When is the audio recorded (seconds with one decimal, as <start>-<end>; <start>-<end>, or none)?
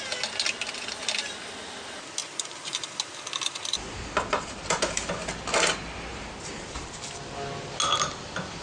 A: 0.0-2.2; 3.2-6.1; 7.3-8.6